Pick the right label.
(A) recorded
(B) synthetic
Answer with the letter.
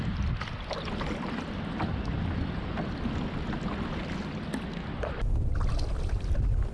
A